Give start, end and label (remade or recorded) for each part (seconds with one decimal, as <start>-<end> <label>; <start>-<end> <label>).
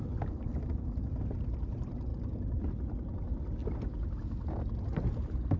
0.0-5.6 recorded